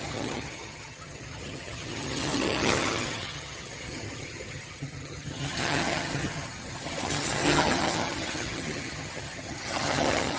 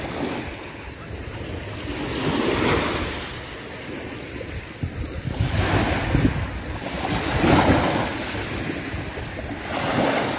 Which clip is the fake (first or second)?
first